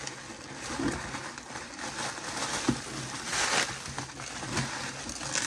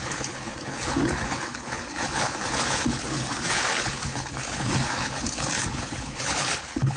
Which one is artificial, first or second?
second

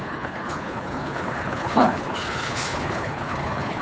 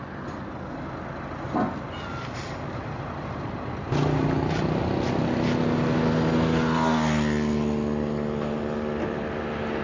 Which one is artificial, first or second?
first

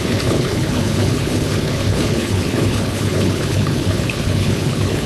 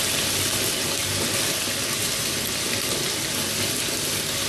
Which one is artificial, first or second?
first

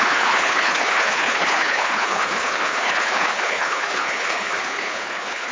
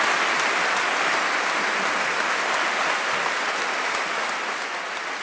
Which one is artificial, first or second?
first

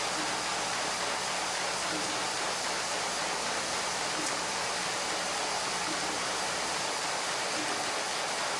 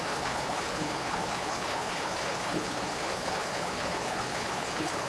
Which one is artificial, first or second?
second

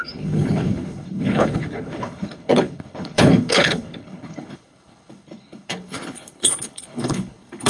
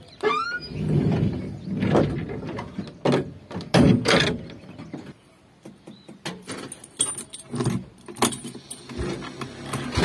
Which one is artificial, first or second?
first